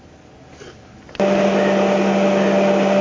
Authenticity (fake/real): real